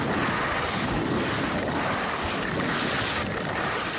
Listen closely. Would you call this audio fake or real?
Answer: real